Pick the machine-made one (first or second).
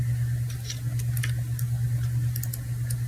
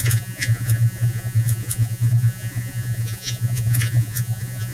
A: second